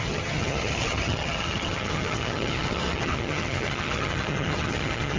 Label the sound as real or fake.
fake